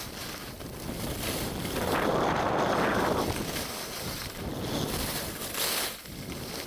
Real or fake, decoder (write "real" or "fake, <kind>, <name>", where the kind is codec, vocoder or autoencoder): real